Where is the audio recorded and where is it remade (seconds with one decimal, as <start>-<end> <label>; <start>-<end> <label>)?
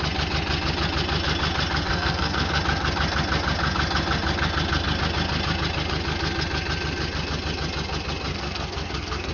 0.0-1.9 recorded; 1.9-2.6 remade; 2.6-8.3 recorded; 8.3-9.3 remade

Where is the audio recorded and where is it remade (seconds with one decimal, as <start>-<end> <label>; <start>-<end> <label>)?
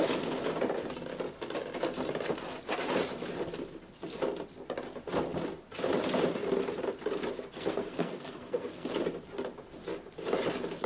0.0-7.5 recorded; 7.5-8.9 remade; 8.9-10.9 recorded